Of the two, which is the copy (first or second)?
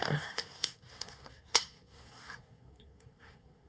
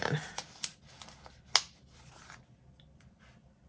first